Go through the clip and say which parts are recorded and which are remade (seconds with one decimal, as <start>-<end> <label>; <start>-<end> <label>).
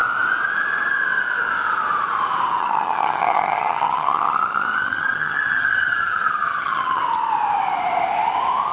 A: 0.0-2.6 recorded; 2.6-7.0 remade; 7.0-8.7 recorded